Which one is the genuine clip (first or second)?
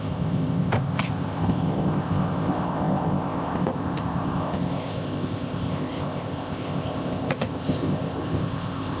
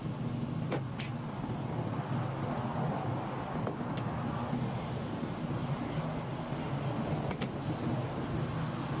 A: second